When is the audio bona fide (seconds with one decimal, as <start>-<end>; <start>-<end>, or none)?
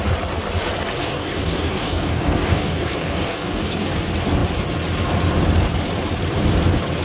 0.0-1.0; 4.0-7.0